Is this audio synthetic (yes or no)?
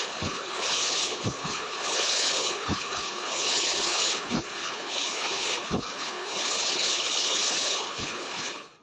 yes